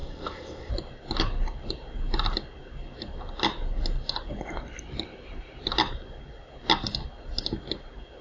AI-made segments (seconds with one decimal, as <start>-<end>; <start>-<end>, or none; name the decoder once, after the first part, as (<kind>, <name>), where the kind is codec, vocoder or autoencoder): 0.0-0.7 (codec, ZipCodec)